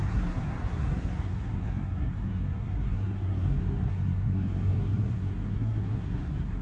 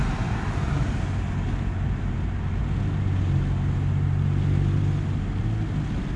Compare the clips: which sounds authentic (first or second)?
second